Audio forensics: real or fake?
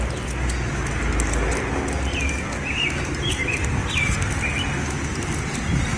real